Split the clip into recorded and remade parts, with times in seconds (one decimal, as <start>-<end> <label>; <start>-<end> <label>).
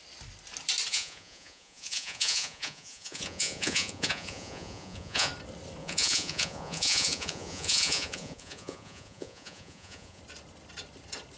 0.0-0.9 recorded; 0.9-5.3 remade; 5.3-5.8 recorded; 5.8-10.2 remade; 10.2-11.4 recorded